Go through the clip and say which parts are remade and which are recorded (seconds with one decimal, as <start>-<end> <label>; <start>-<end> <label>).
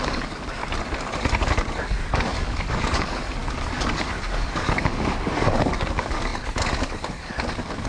0.0-0.6 remade; 0.6-1.8 recorded; 1.8-7.9 remade